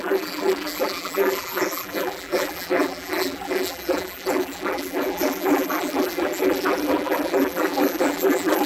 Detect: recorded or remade remade